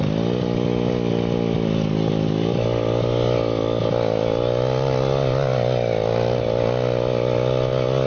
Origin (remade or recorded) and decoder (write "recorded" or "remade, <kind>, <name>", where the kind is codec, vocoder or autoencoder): recorded